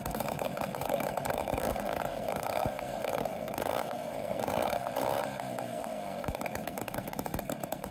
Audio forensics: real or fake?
fake